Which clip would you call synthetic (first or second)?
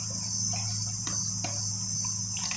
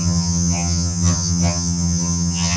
second